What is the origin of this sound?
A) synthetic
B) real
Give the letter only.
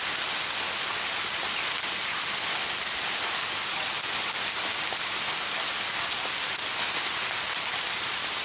B